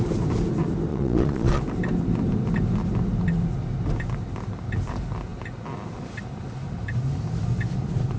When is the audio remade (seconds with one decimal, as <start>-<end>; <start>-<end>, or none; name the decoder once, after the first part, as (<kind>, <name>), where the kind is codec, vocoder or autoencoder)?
0.9-1.6 (vocoder, Vocos)